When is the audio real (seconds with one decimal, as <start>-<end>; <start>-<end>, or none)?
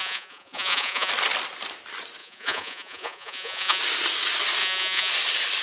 1.1-2.2; 3.8-4.6; 5.1-5.6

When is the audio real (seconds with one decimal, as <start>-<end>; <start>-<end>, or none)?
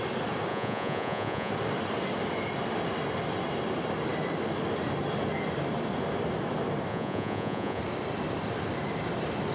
0.0-0.5; 1.5-6.9; 7.8-9.5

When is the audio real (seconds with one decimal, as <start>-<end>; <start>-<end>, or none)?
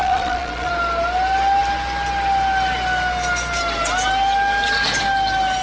0.7-5.6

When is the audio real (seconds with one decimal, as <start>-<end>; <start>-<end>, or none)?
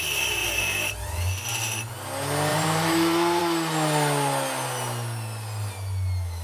0.0-0.4; 0.9-2.5; 3.4-6.4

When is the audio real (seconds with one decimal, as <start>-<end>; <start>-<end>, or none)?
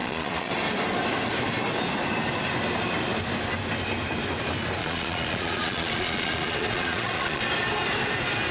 0.5-4.8; 7.4-8.5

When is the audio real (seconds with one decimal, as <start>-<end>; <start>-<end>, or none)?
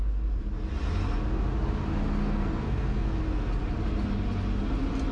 0.0-2.2; 3.2-5.1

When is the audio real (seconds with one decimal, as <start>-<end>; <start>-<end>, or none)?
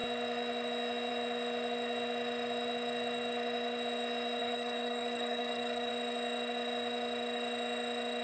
0.0-4.4; 5.9-8.2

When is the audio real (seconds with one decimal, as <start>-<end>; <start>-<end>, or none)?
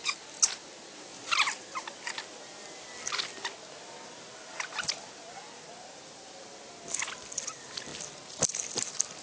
0.0-9.2